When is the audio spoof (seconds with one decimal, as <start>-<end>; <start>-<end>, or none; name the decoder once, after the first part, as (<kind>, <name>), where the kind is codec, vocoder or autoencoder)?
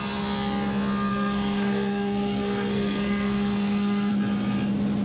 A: 1.1-4.1 (codec, SNAC)